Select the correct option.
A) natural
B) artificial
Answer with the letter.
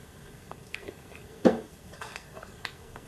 B